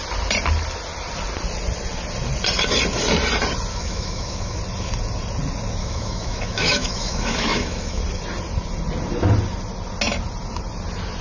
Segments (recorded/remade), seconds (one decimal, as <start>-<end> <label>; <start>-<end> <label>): 0.0-3.7 recorded; 3.7-4.6 remade; 4.6-5.8 recorded; 5.8-8.0 remade; 8.0-11.2 recorded